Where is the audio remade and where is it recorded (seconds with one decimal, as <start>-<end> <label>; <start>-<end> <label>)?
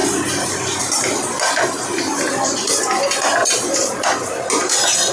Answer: 0.0-5.1 recorded